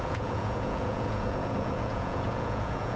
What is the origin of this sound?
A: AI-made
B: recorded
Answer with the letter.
A